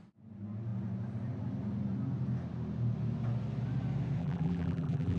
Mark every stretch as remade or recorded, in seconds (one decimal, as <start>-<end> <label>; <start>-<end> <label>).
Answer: 0.0-4.2 recorded; 4.2-5.2 remade